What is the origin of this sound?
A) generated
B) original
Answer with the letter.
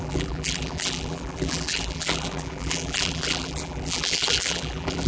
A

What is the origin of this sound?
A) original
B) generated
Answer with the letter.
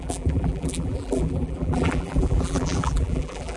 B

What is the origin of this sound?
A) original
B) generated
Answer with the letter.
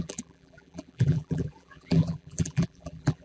B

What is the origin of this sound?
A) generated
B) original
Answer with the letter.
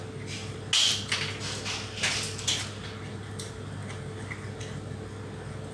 B